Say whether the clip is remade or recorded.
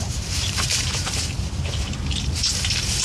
remade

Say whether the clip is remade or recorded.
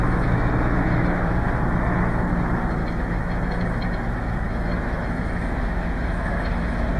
remade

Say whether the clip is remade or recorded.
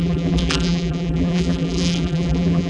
remade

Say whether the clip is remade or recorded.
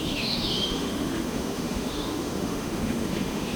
remade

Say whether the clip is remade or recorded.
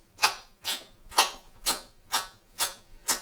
remade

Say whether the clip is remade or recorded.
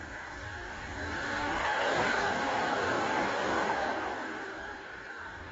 remade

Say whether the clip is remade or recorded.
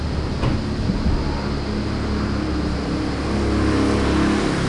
recorded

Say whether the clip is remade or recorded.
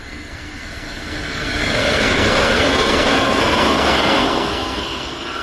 remade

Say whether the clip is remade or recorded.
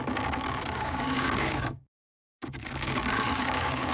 remade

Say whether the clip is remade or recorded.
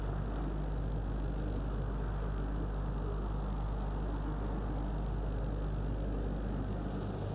recorded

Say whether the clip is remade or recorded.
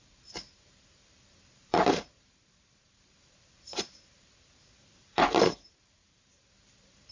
remade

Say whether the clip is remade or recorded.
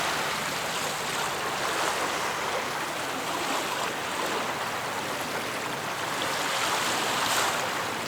recorded